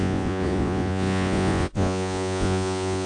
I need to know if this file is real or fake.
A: fake